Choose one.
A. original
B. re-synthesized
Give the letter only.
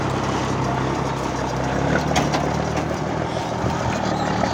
A